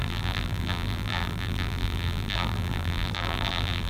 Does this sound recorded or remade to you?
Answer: remade